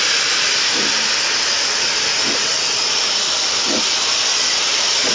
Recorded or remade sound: remade